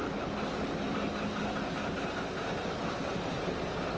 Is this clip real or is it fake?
real